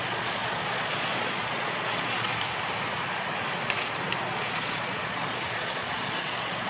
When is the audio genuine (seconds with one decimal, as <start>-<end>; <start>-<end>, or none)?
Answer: 2.3-4.3